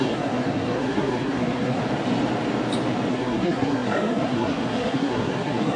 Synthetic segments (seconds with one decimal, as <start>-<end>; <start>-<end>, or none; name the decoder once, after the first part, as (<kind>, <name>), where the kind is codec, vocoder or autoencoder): 0.0-1.8 (codec, SNAC); 3.1-5.8